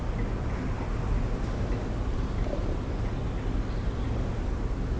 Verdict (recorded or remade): recorded